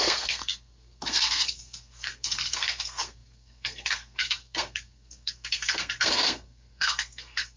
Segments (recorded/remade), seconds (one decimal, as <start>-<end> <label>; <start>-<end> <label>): 0.0-7.6 remade